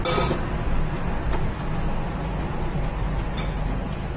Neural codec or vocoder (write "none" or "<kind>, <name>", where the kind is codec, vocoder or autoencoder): none